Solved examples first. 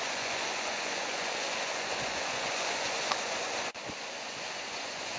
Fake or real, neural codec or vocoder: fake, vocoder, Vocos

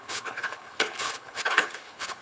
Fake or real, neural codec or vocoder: fake, codec, HILCodec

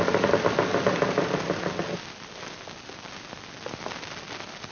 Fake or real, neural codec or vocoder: real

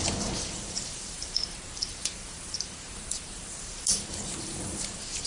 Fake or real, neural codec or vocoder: fake, vocoder, BigVGAN v2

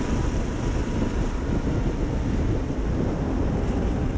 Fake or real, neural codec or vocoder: real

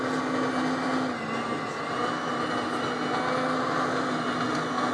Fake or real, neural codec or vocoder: real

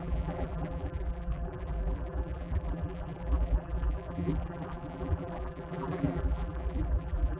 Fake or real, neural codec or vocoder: fake, vocoder, BigVGAN v2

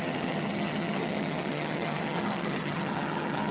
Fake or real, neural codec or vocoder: fake, vocoder, HiFi-GAN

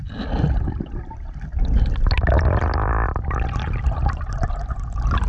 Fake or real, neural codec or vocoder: real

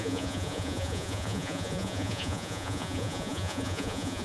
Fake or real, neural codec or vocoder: fake, vocoder, Vocos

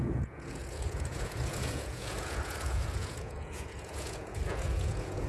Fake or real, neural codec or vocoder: fake, vocoder, Vocos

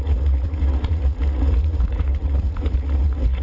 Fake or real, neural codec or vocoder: fake, vocoder, Vocos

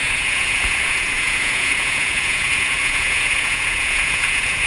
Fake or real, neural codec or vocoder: fake, vocoder, Vocos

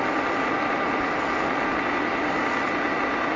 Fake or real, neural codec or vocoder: real